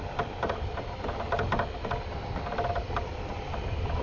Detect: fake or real real